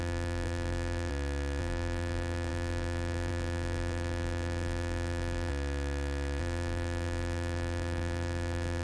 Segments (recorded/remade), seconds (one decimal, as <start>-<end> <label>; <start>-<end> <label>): 0.0-1.1 remade; 1.1-1.6 recorded; 1.6-5.5 remade; 5.5-6.4 recorded; 6.4-8.8 remade